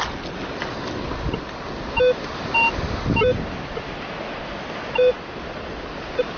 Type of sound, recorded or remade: recorded